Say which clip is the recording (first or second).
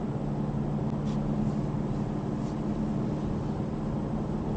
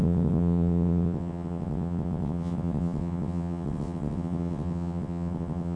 first